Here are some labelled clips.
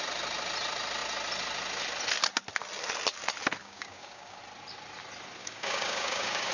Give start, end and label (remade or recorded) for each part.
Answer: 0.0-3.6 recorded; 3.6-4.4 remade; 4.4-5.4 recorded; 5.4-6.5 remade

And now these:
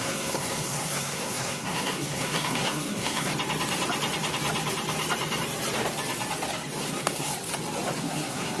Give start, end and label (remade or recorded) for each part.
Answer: 0.0-3.3 remade; 3.3-6.8 recorded; 6.8-7.3 remade; 7.3-8.0 recorded; 8.0-8.6 remade

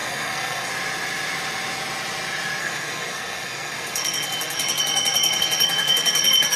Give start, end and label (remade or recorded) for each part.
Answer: 0.0-0.7 remade; 0.7-2.6 recorded; 2.6-6.6 remade

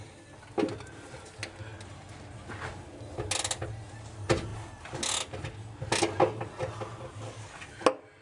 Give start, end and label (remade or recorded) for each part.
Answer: 0.0-8.2 recorded

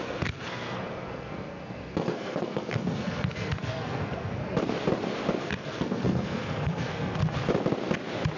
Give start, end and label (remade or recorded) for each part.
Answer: 0.0-4.4 remade; 4.4-5.4 recorded; 5.4-7.2 remade; 7.2-8.4 recorded